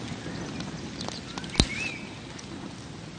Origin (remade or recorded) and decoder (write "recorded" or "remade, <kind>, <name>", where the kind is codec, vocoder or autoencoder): recorded